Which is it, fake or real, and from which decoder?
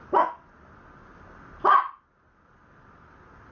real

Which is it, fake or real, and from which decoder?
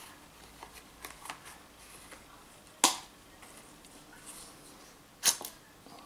real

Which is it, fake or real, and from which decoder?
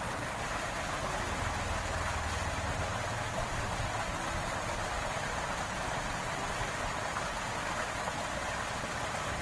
real